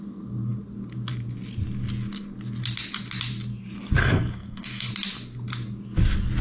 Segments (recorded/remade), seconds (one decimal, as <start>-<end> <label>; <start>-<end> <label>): 0.0-4.0 recorded; 4.0-4.9 remade; 4.9-6.4 recorded